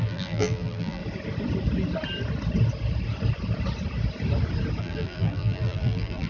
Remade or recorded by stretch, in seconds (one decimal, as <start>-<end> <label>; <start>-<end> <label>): 0.0-1.0 remade; 1.0-4.8 recorded; 4.8-6.3 remade